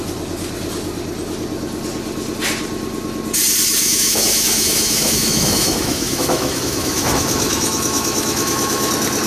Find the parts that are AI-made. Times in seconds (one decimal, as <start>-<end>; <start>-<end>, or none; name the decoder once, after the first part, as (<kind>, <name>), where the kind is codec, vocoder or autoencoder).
3.8-8.9 (autoencoder, DAC-VAE)